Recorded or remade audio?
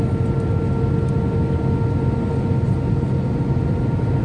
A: recorded